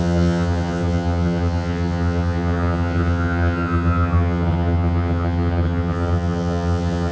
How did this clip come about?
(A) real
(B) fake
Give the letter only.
B